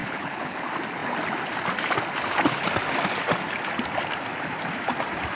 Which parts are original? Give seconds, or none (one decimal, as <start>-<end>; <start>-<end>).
0.6-5.4